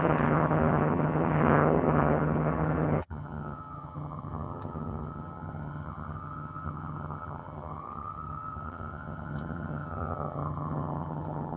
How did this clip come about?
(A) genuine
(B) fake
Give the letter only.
B